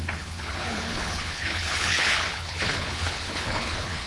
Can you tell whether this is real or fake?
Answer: fake